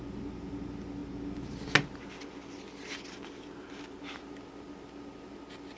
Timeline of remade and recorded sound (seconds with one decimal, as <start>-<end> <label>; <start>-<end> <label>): 0.0-5.8 recorded